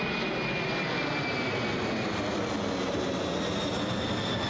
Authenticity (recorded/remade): recorded